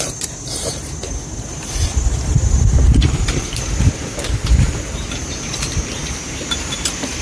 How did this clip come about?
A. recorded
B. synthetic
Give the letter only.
B